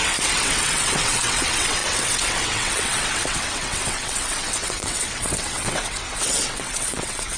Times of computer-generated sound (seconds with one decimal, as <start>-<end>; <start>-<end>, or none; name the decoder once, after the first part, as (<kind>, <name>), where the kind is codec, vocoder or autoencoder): 0.0-7.4 (vocoder, WaveNeXt)